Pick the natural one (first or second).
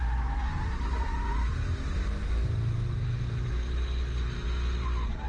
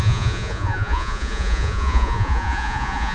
first